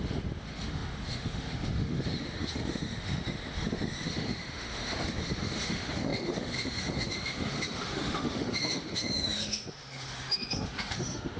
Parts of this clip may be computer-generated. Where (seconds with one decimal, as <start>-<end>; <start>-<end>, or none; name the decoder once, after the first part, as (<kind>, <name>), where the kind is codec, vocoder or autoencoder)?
0.0-11.4 (autoencoder, DAC-VAE)